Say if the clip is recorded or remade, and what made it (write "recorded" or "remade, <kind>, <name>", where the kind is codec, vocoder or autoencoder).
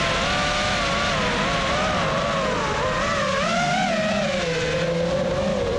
recorded